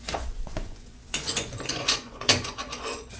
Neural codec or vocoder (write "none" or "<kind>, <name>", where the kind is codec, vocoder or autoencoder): vocoder, Vocos